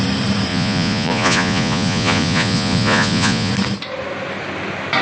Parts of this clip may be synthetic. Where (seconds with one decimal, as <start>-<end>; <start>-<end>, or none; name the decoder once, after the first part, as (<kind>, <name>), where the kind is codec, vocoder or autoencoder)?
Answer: 0.5-3.5 (vocoder, Vocos)